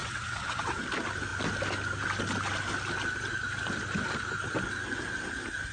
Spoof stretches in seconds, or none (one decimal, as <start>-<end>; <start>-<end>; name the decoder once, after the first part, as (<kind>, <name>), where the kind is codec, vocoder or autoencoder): 0.0-0.8 (vocoder, WaveNeXt)